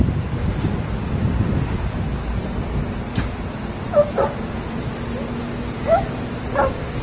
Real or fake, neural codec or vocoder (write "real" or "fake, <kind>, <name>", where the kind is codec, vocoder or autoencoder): real